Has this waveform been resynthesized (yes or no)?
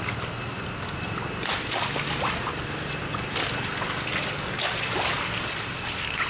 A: no